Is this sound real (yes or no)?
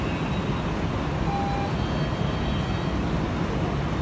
yes